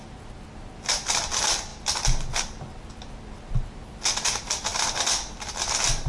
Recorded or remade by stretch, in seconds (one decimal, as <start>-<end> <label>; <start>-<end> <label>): 0.0-6.1 recorded